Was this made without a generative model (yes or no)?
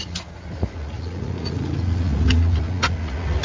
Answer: no